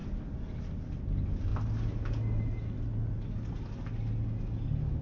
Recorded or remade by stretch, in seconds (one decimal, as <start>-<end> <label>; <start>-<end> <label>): 0.0-5.0 recorded